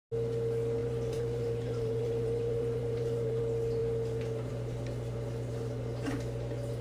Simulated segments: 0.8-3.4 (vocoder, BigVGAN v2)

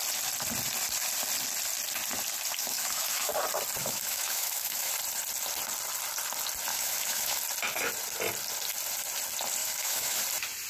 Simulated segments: 2.6-3.3 (autoencoder, DAC-VAE); 3.8-4.9; 6.7-7.4; 9.6-10.2

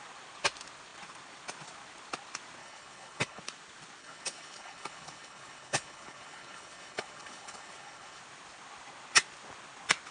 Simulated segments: 2.6-3.4 (codec, HILCodec); 4.0-8.2

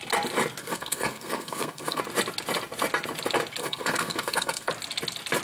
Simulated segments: 0.6-2.0 (codec, SNAC); 3.6-4.7